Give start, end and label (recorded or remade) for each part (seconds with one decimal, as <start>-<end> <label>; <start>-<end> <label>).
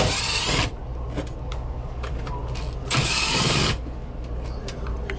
0.0-1.5 recorded; 1.5-2.1 remade; 2.1-2.8 recorded; 2.8-4.1 remade; 4.1-5.2 recorded